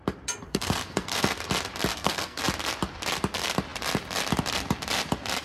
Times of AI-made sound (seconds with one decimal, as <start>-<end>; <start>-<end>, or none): 0.5-1.4; 1.9-2.4